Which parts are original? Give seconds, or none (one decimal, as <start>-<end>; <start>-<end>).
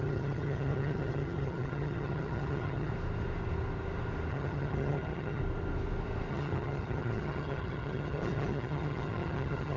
2.9-4.3; 5.4-6.3